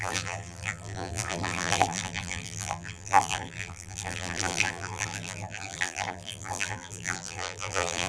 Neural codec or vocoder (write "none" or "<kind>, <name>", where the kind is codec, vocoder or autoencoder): vocoder, BigVGAN v2